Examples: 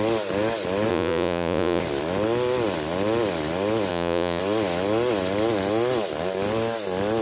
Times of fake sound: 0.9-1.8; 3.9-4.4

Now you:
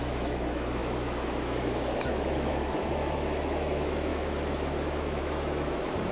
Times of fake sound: 0.0-6.1

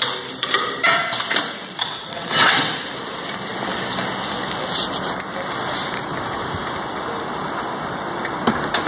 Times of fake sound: 1.8-2.7